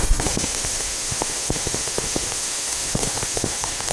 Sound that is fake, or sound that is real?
fake